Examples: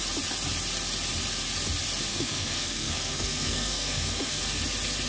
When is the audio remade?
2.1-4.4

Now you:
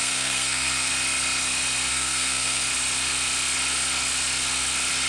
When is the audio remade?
0.0-0.9; 1.9-2.6

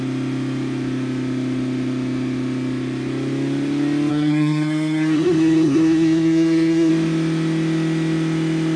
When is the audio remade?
4.1-6.9

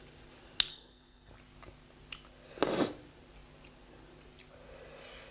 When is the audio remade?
0.7-1.3

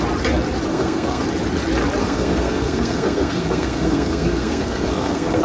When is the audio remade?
0.7-1.2; 2.0-5.4

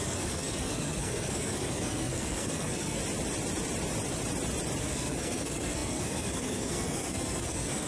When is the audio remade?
0.0-3.0; 4.8-7.9

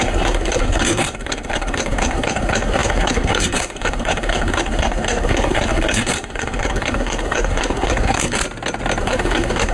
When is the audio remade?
0.0-8.4; 9.0-9.7